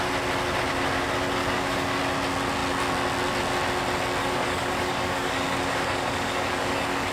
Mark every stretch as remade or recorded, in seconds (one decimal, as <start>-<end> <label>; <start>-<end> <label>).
0.0-1.4 recorded; 1.4-2.0 remade; 2.0-4.2 recorded; 4.2-7.1 remade